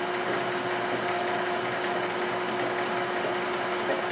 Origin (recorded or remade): recorded